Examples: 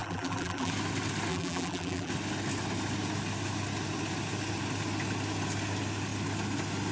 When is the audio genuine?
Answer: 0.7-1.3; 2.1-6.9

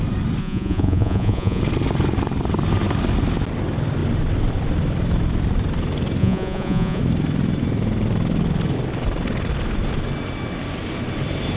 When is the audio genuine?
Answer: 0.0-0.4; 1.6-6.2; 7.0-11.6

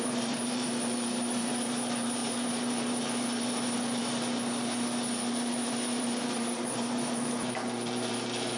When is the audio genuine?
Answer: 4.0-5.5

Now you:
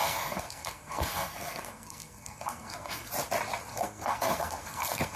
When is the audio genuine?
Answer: 3.1-3.7

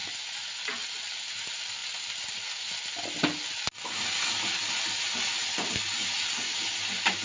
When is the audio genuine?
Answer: 0.0-7.2

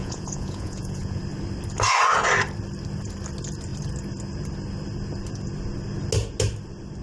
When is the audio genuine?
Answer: 1.2-7.0

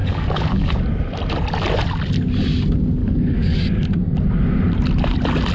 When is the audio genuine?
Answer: 0.8-3.0; 3.6-5.5